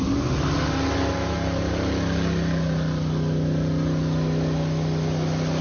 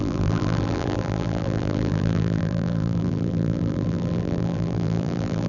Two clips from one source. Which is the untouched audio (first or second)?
first